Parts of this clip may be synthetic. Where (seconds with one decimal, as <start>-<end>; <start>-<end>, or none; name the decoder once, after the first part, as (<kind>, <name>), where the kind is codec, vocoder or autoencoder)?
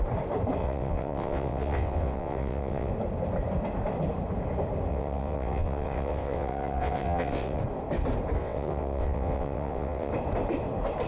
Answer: 0.6-2.9 (vocoder, WaveNeXt); 4.9-7.6; 8.4-10.1